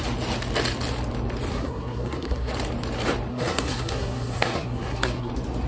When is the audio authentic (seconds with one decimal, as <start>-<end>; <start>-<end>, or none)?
0.0-1.5; 2.5-3.3; 5.3-5.7